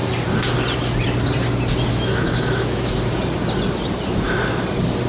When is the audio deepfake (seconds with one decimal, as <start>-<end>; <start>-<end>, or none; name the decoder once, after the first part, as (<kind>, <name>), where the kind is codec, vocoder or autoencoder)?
1.9-3.0 (autoencoder, DAC-VAE)